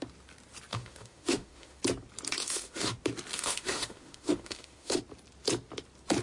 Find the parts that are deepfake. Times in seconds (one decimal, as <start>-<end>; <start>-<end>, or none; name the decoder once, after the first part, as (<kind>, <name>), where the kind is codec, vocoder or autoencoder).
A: 0.7-1.8 (autoencoder, DAC-VAE); 2.4-2.9; 3.3-5.0